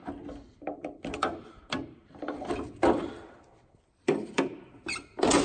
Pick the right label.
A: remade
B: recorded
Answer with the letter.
A